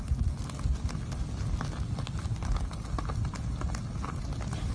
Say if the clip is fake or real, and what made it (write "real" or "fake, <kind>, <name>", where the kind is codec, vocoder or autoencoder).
real